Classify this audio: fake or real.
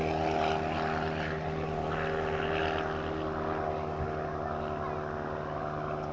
real